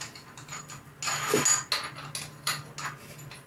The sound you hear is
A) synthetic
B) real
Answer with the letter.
B